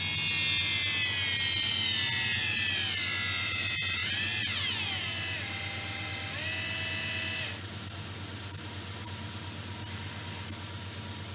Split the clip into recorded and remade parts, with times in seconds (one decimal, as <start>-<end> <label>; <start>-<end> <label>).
0.0-11.3 recorded